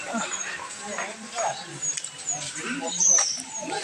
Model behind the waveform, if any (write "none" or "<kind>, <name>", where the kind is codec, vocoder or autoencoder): vocoder, BigVGAN v2